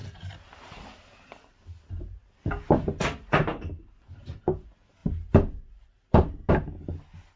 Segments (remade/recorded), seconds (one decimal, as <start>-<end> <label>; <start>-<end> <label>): 0.0-7.4 recorded

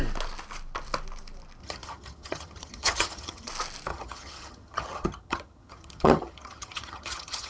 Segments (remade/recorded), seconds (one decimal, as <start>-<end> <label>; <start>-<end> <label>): 0.0-1.6 recorded; 1.6-3.5 remade; 3.5-3.9 recorded; 3.9-7.5 remade

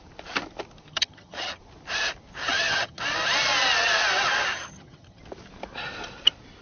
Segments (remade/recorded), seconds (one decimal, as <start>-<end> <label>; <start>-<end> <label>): 0.0-0.9 recorded; 0.9-1.6 remade; 1.6-2.4 recorded; 2.4-3.0 remade; 3.0-4.5 recorded; 4.5-5.2 remade; 5.2-6.6 recorded

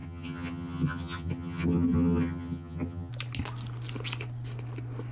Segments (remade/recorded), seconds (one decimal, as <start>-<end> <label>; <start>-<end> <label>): 0.0-3.1 remade; 3.1-5.1 recorded

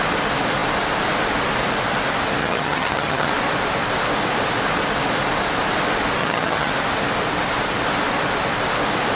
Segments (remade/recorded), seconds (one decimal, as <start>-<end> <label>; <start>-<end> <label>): 0.0-2.4 recorded; 2.4-3.3 remade; 3.3-6.2 recorded; 6.2-6.7 remade; 6.7-9.2 recorded